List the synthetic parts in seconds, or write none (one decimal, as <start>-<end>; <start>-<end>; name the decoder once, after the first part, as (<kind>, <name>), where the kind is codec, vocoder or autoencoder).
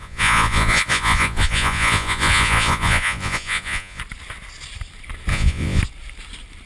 0.0-4.0 (vocoder, Vocos); 5.3-5.8